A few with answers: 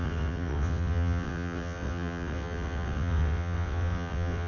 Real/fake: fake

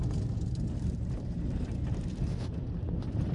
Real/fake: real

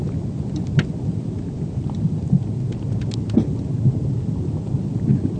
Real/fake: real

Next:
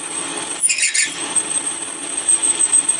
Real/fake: real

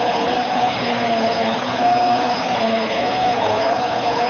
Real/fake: fake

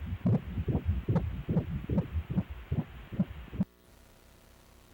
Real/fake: real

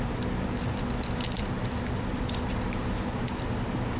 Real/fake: real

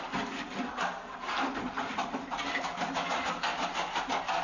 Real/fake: real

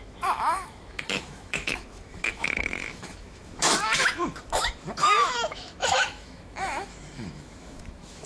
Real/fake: fake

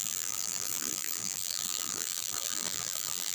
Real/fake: fake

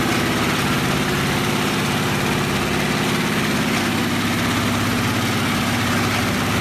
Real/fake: real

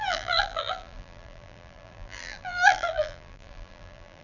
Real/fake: fake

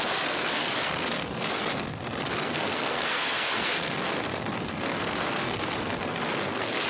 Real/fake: fake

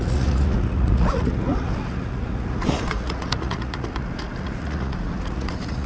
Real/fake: fake